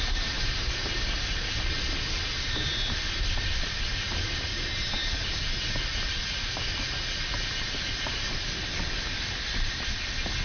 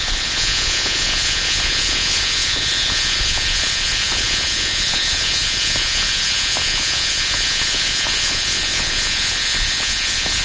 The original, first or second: first